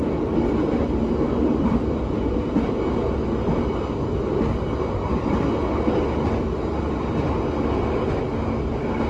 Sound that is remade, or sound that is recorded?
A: recorded